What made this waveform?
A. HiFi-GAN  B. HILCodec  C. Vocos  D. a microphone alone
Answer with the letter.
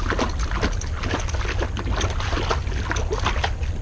D